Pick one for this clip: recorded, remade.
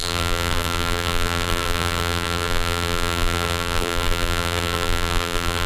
remade